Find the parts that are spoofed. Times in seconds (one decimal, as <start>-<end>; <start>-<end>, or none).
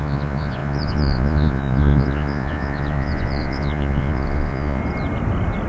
0.0-4.8